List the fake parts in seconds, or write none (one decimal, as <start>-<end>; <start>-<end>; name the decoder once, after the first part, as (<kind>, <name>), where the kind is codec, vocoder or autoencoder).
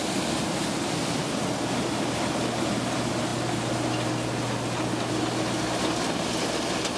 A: none